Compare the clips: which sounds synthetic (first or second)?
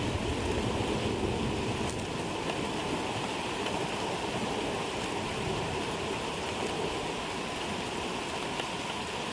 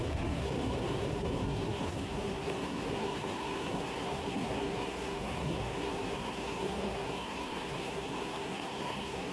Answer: second